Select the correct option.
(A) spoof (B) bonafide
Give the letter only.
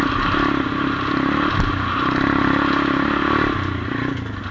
B